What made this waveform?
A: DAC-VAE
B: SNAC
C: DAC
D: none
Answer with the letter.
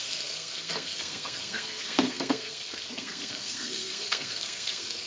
B